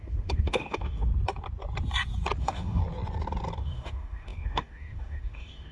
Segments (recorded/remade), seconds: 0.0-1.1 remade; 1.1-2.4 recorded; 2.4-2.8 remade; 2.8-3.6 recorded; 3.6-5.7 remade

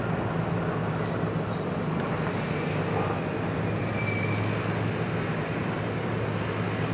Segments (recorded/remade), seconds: 0.0-6.9 recorded

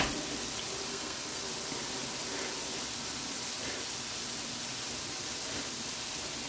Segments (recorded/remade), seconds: 0.0-0.9 recorded; 0.9-1.4 remade; 1.4-6.5 recorded

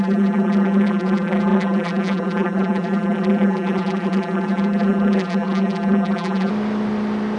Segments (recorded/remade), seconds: 0.0-6.5 remade; 6.5-7.4 recorded

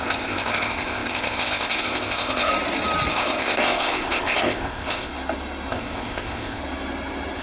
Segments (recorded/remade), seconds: 0.0-2.5 remade; 2.5-3.1 recorded; 3.1-5.1 remade; 5.1-5.7 recorded; 5.7-6.6 remade; 6.6-7.4 recorded

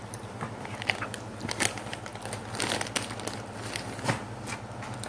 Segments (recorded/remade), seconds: 0.0-1.1 remade; 1.1-5.1 recorded